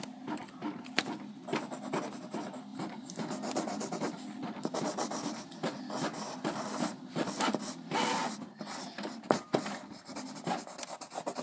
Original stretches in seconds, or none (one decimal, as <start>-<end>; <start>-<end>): 0.0-11.4